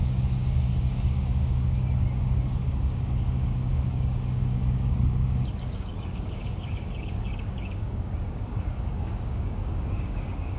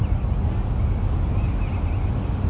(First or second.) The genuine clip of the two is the second